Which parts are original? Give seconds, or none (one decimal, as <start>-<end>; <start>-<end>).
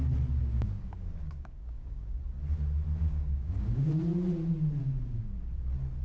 0.0-0.4; 2.2-3.0; 3.9-4.8; 5.3-6.0